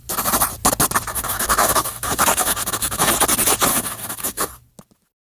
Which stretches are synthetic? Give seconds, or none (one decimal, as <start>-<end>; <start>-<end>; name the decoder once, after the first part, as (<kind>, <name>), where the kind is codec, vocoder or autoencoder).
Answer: 1.1-3.1 (codec, DAC); 3.7-4.5